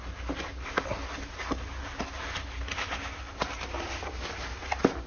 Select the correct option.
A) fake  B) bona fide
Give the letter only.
B